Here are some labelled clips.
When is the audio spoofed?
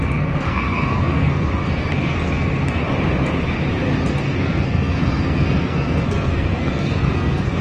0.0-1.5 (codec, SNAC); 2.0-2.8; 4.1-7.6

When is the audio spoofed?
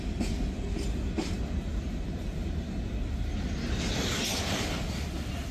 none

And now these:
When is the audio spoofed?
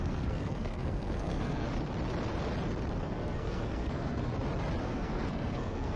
0.0-1.7 (codec, SNAC); 3.0-4.3; 4.8-6.0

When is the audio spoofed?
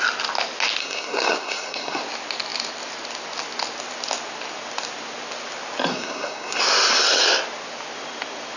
0.8-2.0 (codec, SNAC); 5.9-6.6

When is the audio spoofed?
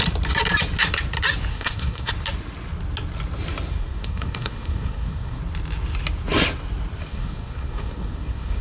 1.5-2.1 (codec, SNAC); 3.7-5.4; 7.1-8.6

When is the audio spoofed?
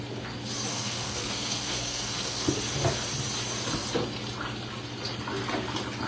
0.7-2.5 (codec, SNAC)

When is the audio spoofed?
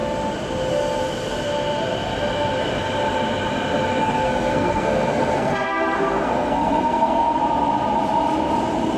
3.9-7.4 (codec, SNAC)